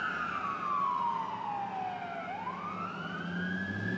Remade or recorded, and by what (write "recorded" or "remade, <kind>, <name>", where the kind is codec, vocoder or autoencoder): recorded